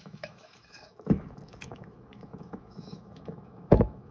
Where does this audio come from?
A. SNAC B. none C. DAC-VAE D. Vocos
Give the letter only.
C